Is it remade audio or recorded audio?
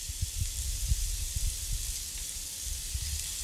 remade